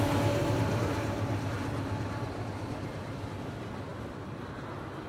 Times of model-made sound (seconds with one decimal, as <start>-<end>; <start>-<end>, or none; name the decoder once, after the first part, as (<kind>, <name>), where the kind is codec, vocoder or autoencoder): 0.4-2.1 (vocoder, BigVGAN v2)